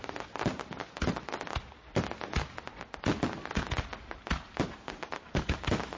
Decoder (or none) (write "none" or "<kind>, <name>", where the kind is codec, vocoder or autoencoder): none